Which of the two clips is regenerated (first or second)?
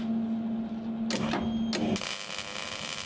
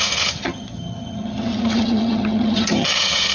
second